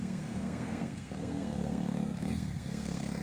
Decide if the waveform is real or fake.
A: fake